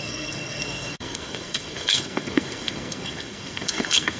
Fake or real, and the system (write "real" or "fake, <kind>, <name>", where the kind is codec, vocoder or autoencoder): fake, codec, SNAC